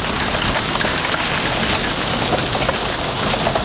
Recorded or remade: recorded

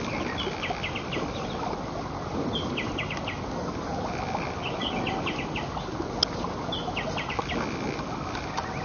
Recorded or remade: recorded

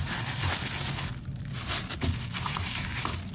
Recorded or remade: recorded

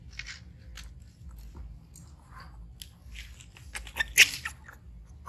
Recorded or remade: recorded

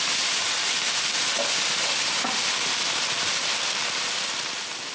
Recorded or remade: recorded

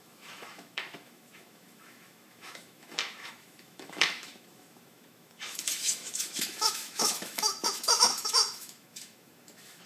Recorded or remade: remade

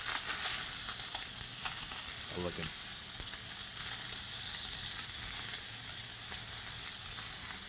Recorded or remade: recorded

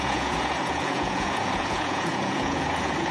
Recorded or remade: remade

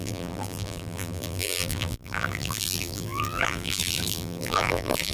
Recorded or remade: remade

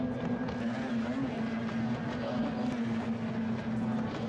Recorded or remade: recorded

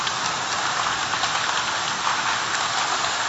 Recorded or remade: recorded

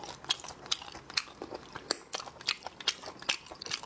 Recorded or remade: recorded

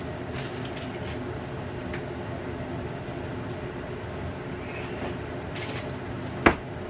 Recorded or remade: recorded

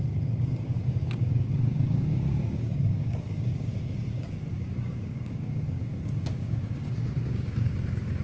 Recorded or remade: remade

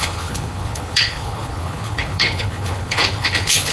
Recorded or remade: remade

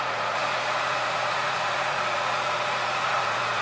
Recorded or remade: remade